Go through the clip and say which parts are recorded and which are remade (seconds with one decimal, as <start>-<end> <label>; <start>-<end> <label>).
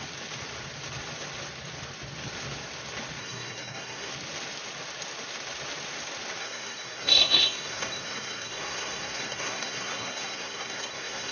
0.0-3.2 recorded; 3.2-4.1 remade; 4.1-6.4 recorded; 6.4-11.3 remade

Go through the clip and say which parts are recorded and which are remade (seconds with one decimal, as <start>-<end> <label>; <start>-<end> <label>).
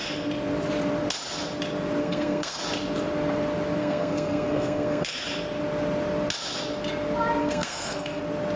0.0-2.0 recorded; 2.0-2.6 remade; 2.6-3.8 recorded; 3.8-5.1 remade; 5.1-7.4 recorded; 7.4-8.2 remade; 8.2-8.6 recorded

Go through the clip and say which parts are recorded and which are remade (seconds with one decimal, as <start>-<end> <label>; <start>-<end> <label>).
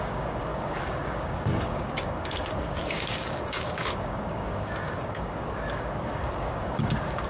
0.0-7.3 remade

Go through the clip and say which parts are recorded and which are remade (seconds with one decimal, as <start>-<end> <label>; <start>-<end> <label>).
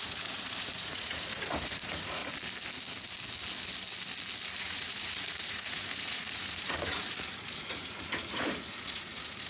0.0-2.2 remade; 2.2-4.6 recorded; 4.6-9.5 remade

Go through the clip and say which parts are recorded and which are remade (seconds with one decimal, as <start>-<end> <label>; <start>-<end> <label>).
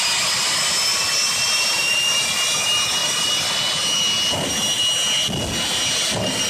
0.0-6.5 recorded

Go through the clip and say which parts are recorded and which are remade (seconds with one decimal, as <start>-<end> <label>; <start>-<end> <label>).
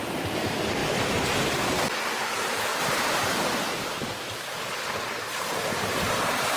0.0-2.7 recorded; 2.7-6.0 remade; 6.0-6.6 recorded